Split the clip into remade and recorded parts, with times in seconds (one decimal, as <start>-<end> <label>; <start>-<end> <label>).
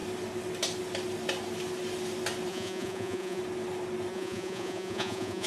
0.0-2.5 recorded; 2.5-3.4 remade; 3.4-4.1 recorded; 4.1-5.5 remade